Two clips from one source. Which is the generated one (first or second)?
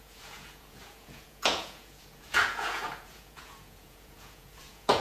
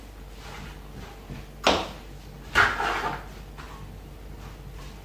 first